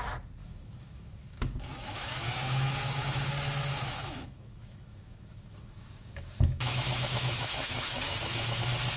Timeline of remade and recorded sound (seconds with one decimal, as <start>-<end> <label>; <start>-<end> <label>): 0.0-0.4 recorded; 0.4-3.3 remade; 3.3-3.7 recorded; 3.7-8.6 remade; 8.6-9.0 recorded